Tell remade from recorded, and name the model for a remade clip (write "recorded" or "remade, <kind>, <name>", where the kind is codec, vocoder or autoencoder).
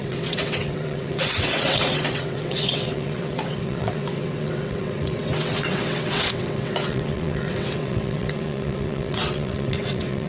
remade, vocoder, WaveNeXt